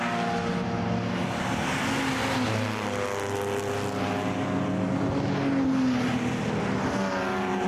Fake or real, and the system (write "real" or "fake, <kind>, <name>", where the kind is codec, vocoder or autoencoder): real